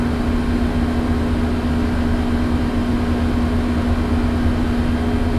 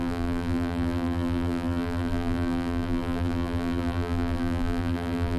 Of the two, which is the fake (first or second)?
second